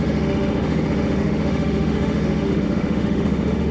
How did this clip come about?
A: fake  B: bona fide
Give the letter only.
A